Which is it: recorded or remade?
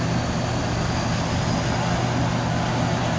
recorded